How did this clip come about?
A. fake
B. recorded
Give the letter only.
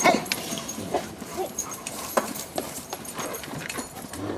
A